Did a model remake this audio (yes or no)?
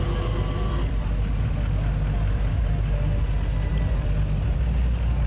no